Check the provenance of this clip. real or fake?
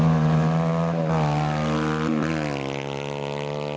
real